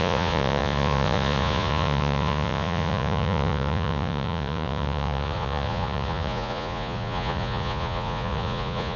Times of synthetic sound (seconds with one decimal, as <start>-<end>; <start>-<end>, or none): 0.0-9.0